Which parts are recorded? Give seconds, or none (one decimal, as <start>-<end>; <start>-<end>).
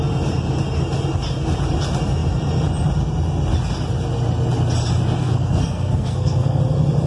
0.0-5.2; 6.6-7.1